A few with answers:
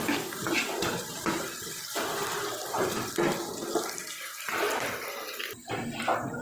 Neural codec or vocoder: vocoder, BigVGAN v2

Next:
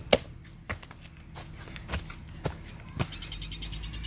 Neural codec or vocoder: none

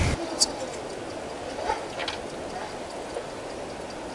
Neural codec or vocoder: none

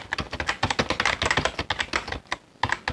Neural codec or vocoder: none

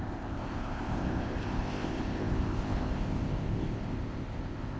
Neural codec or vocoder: codec, ZipCodec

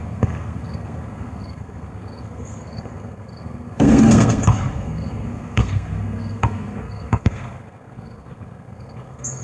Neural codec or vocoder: codec, SNAC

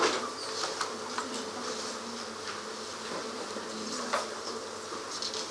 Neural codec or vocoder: none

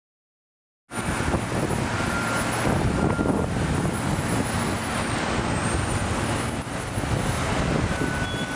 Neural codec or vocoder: none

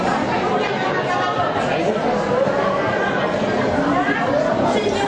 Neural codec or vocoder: none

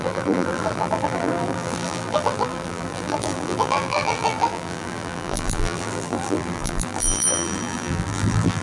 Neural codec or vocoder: vocoder, BigVGAN v2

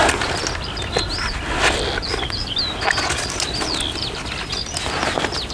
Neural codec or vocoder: none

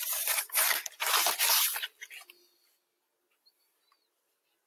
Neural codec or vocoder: none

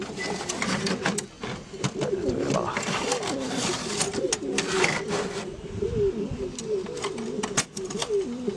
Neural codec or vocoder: none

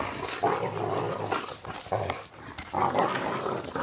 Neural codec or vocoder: none